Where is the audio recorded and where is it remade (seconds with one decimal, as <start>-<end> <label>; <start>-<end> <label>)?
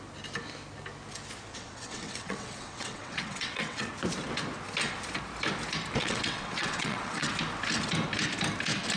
0.0-1.5 recorded; 1.5-3.9 remade; 3.9-6.0 recorded; 6.0-7.3 remade; 7.3-9.0 recorded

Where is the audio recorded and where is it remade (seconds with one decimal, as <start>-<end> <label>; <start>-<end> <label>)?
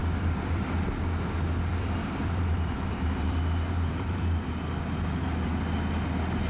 0.0-0.7 remade; 0.7-1.7 recorded; 1.7-4.5 remade; 4.5-6.5 recorded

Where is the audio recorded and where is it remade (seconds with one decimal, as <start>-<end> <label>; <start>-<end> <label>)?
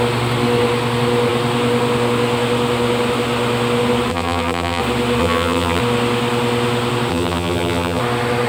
0.0-4.1 recorded; 4.1-4.8 remade; 4.8-5.2 recorded; 5.2-5.8 remade; 5.8-7.1 recorded; 7.1-8.0 remade; 8.0-8.5 recorded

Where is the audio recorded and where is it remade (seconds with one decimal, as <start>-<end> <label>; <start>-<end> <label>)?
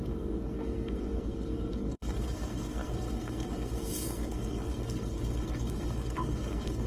0.0-6.9 remade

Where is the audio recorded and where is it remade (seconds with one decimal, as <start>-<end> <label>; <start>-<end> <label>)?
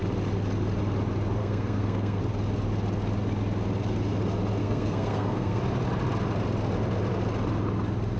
0.0-1.4 recorded; 1.4-2.2 remade; 2.2-4.6 recorded; 4.6-5.6 remade; 5.6-8.2 recorded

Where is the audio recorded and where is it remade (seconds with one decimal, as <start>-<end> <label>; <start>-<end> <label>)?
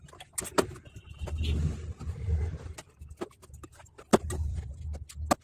0.0-4.1 recorded; 4.1-4.7 remade; 4.7-5.4 recorded